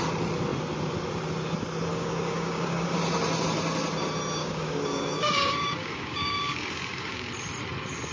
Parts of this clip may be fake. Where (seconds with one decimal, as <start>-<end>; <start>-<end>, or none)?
1.9-3.0; 4.4-7.3